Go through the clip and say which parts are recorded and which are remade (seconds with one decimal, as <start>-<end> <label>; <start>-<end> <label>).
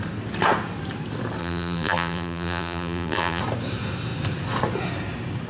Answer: 0.0-1.4 recorded; 1.4-3.4 remade; 3.4-5.5 recorded